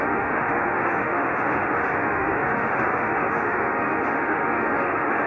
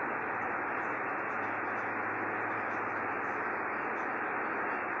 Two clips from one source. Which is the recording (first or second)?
second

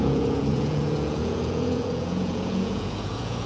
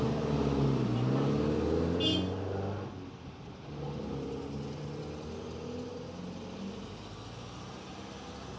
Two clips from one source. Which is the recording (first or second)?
second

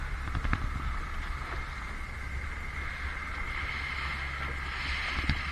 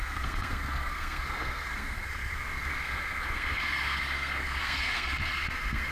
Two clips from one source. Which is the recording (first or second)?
first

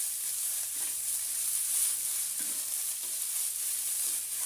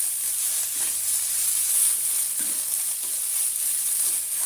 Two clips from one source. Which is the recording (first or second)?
second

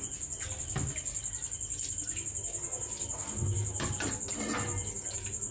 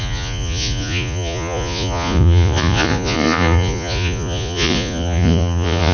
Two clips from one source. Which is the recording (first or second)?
first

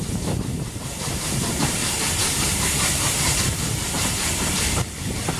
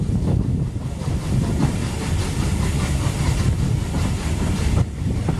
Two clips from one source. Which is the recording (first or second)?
second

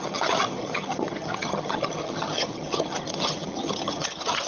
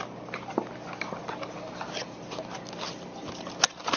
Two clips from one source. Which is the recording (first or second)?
second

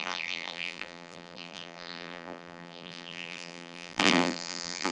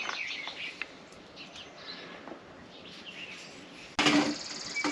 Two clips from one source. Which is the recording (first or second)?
second